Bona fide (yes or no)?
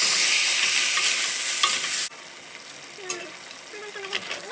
yes